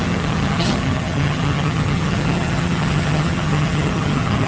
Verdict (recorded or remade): remade